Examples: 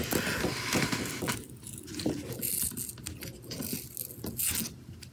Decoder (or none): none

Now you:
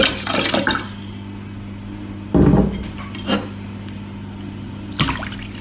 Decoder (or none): none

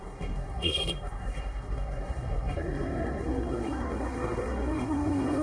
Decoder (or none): codec, SNAC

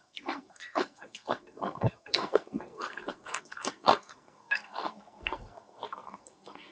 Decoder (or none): codec, SNAC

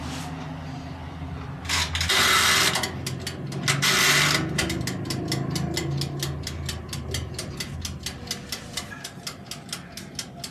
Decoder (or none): none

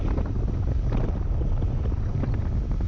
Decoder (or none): none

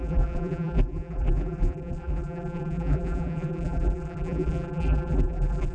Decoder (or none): vocoder, BigVGAN v2